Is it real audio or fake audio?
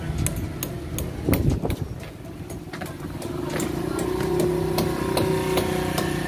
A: real